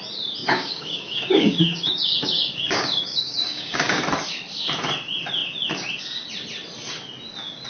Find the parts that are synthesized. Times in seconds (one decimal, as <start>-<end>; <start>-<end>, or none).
0.4-4.0